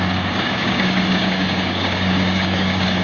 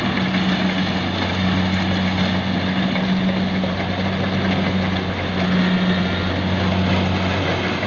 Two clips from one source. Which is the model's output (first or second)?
first